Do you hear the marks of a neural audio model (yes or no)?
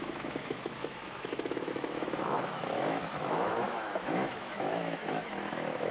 yes